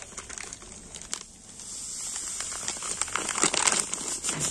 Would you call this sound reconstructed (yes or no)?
no